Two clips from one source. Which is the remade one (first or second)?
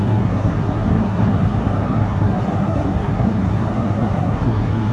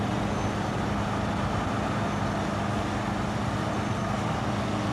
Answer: first